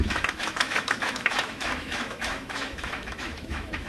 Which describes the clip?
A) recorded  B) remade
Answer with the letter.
B